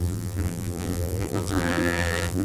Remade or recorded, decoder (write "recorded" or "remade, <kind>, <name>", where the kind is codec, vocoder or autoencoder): remade, vocoder, BigVGAN v2